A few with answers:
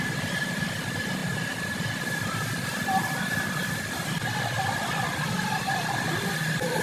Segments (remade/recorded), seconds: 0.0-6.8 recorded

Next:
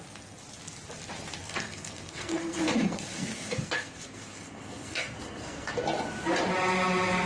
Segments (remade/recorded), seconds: 0.0-1.4 recorded; 1.4-5.8 remade; 5.8-7.3 recorded

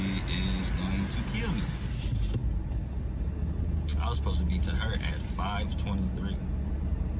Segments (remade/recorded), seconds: 0.0-7.2 recorded

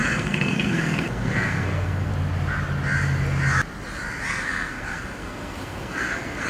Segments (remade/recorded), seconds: 0.0-2.1 remade; 2.1-4.3 recorded; 4.3-6.5 remade

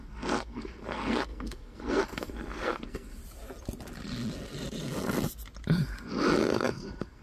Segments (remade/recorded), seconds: 0.0-3.2 remade; 3.2-6.4 recorded; 6.4-7.2 remade

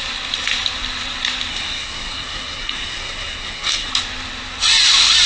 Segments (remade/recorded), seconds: 0.0-1.5 recorded; 1.5-3.9 remade; 3.9-5.3 recorded